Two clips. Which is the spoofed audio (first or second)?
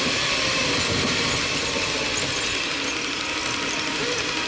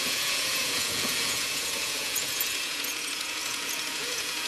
second